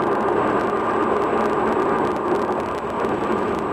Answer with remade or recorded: recorded